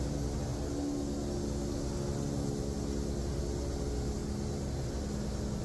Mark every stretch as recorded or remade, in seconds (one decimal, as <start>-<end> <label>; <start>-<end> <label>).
0.0-5.6 recorded